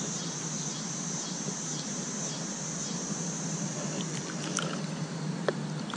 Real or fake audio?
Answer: fake